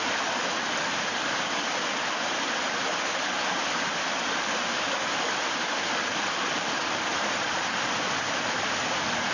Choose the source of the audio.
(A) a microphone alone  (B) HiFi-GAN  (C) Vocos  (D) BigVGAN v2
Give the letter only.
D